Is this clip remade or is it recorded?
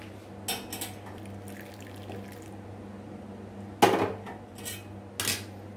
recorded